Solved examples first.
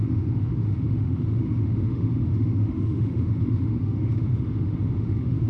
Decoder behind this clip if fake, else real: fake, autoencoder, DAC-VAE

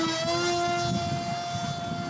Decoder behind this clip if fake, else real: real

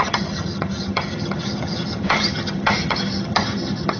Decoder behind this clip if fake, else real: fake, vocoder, HiFi-GAN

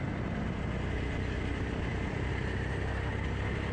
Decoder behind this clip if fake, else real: real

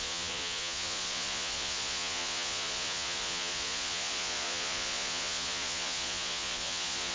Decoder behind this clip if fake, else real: fake, vocoder, Vocos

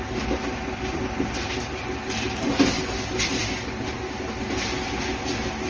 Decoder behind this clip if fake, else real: real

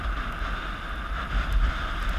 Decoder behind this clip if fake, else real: real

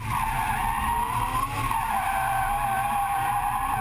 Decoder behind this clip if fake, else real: real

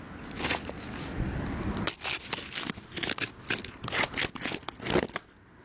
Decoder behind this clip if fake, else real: real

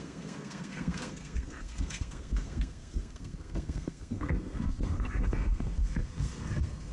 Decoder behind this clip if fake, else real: fake, codec, SNAC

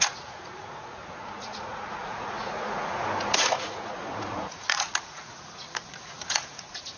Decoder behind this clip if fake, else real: fake, vocoder, Vocos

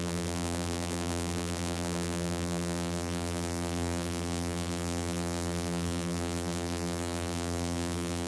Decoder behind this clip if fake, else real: fake, vocoder, BigVGAN v2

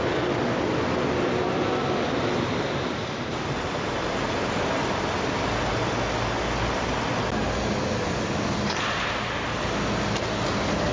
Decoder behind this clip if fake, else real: real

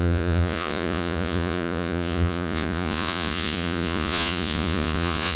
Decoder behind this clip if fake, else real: fake, vocoder, Vocos